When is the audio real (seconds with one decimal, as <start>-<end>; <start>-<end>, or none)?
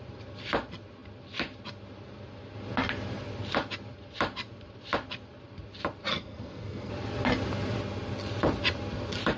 0.0-6.1; 6.9-9.4